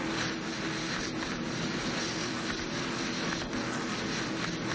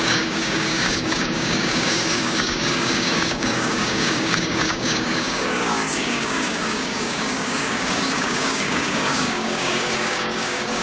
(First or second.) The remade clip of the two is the second